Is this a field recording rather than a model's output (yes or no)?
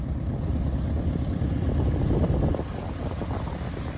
yes